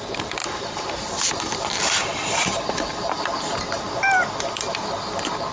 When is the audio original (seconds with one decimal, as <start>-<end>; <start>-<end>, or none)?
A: 0.0-0.4; 3.7-5.5